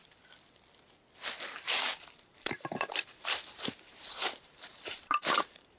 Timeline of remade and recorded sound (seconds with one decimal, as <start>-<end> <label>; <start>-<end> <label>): 0.0-1.9 recorded; 1.9-5.8 remade